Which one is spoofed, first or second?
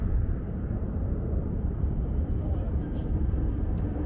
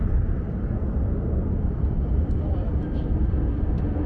first